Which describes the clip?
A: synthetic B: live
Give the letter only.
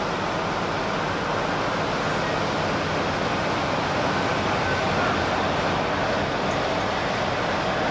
B